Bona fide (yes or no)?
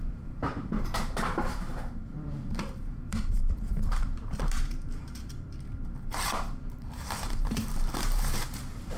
no